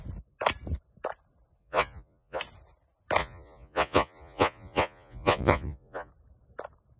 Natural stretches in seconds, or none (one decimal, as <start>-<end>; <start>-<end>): 0.0-1.6; 2.4-3.2; 6.1-7.0